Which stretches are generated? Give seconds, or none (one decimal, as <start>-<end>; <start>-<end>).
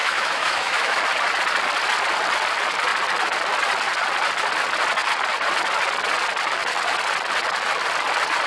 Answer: 0.0-1.0